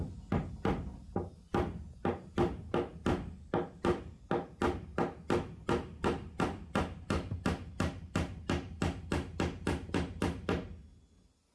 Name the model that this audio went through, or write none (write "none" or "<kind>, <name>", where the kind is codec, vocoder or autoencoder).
none